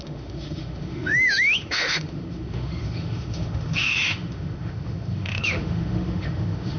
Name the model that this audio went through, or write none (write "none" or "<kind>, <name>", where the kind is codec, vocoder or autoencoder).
autoencoder, DAC-VAE